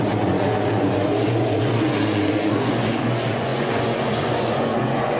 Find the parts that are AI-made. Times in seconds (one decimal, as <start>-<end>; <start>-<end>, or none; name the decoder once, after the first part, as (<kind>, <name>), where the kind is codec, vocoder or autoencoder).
0.0-5.2 (vocoder, Vocos)